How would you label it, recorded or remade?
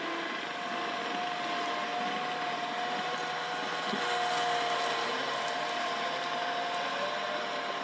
recorded